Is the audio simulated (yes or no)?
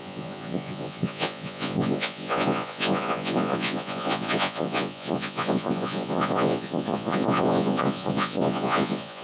yes